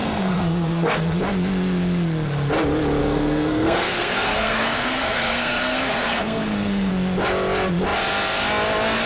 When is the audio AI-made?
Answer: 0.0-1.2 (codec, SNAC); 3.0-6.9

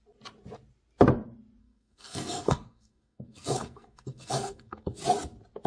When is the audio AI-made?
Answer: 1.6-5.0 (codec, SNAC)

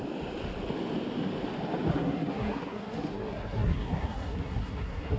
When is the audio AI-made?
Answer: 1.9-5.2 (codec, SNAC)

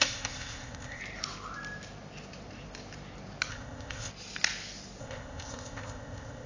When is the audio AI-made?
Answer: 0.0-1.0 (codec, ZipCodec); 3.5-4.1; 5.0-6.5